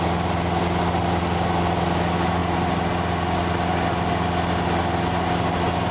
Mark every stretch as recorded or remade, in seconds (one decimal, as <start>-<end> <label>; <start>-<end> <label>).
0.0-5.9 recorded